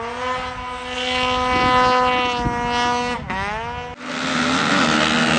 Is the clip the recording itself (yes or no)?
yes